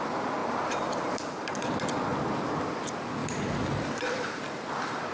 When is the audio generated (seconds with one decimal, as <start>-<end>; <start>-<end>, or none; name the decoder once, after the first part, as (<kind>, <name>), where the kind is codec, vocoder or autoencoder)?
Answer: 0.4-1.5 (vocoder, BigVGAN v2); 3.2-4.4